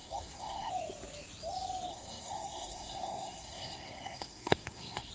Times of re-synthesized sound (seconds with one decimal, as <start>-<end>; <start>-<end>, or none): 0.0-0.7; 1.9-5.1